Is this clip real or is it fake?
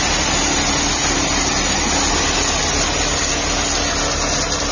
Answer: real